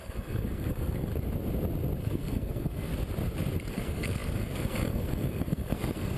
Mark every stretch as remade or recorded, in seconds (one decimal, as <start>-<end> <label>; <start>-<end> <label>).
0.0-1.1 remade; 1.1-2.0 recorded; 2.0-2.9 remade; 2.9-3.7 recorded; 3.7-6.2 remade